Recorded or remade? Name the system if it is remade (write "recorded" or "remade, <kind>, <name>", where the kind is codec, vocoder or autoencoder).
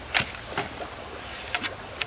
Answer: recorded